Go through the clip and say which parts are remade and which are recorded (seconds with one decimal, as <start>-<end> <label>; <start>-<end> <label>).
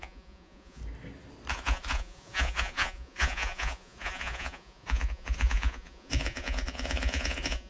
0.0-0.8 remade; 0.8-1.5 recorded; 1.5-7.7 remade